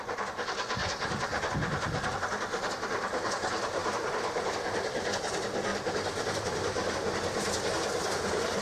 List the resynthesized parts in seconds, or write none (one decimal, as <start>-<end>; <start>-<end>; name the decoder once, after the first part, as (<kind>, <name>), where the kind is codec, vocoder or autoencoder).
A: none